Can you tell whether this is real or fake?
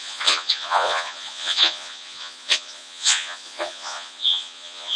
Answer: fake